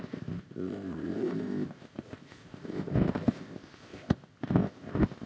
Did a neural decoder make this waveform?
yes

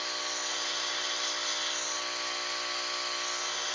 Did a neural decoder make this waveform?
no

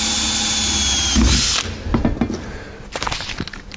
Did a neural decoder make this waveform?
no